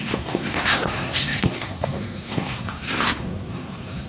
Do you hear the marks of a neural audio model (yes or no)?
yes